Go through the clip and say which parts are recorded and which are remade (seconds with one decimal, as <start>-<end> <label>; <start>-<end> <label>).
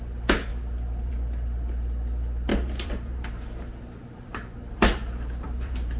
0.0-2.5 recorded; 2.5-6.0 remade